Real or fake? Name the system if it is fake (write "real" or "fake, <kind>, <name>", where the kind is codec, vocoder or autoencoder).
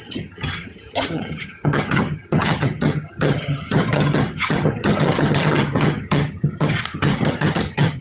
fake, vocoder, HiFi-GAN